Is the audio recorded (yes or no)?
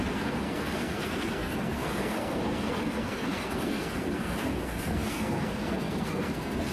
no